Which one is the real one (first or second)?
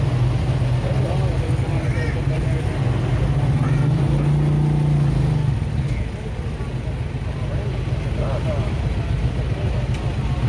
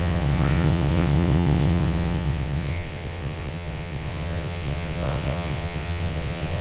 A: first